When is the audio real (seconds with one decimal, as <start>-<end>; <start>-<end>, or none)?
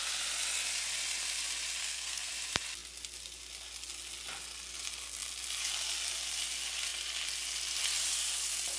0.0-1.8; 2.3-8.8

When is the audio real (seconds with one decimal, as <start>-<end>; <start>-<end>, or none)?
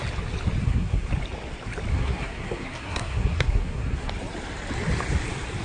0.0-0.6; 1.1-1.9; 4.1-5.6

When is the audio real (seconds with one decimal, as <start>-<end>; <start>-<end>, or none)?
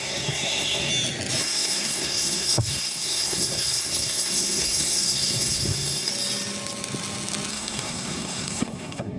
0.9-1.4; 6.1-7.5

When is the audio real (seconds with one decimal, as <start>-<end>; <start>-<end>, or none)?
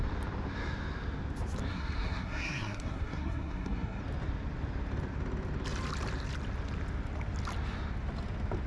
0.0-1.7; 4.0-8.7